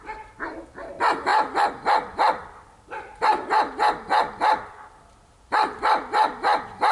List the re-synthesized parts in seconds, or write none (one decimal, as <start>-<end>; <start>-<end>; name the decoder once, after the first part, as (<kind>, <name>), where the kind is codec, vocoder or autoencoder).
none